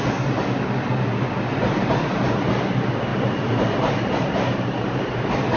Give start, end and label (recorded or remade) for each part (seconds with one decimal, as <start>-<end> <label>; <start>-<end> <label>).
0.0-3.1 recorded; 3.1-5.0 remade; 5.0-5.6 recorded